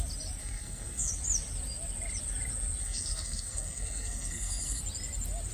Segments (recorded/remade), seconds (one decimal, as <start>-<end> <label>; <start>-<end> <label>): 0.0-0.4 recorded; 0.4-1.1 remade; 1.1-2.8 recorded; 2.8-4.8 remade; 4.8-5.5 recorded

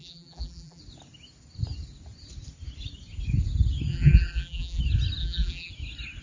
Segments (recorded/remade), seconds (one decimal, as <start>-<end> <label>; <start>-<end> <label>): 0.0-0.8 remade; 0.8-3.9 recorded; 3.9-4.8 remade; 4.8-5.2 recorded; 5.2-5.7 remade; 5.7-6.2 recorded

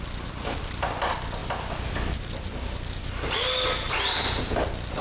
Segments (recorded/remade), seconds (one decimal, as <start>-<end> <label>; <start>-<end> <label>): 0.0-5.0 recorded

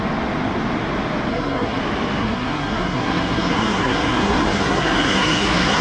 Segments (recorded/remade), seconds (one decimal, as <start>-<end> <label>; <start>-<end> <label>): 0.0-1.3 recorded; 1.3-1.8 remade; 1.8-2.2 recorded; 2.2-5.8 remade